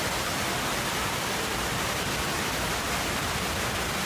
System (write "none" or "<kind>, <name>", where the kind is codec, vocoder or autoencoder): vocoder, BigVGAN v2